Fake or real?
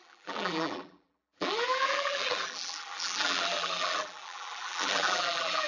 fake